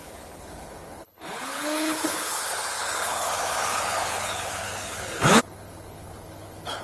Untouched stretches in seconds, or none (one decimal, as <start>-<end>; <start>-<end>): none